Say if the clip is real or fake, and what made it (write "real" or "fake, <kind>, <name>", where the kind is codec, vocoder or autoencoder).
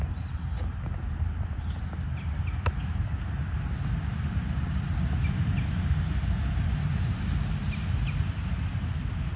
real